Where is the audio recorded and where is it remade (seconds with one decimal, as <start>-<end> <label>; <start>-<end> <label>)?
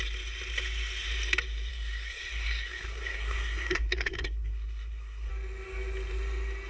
0.0-1.7 recorded; 1.7-5.3 remade; 5.3-6.7 recorded